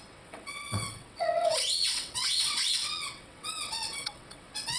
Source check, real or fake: fake